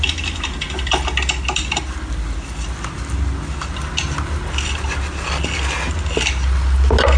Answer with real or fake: real